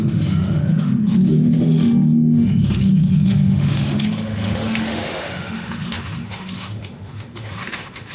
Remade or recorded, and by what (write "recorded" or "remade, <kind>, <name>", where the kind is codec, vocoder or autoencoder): remade, autoencoder, DAC-VAE